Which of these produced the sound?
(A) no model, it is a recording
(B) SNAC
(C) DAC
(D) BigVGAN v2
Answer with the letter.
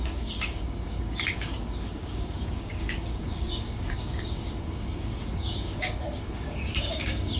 C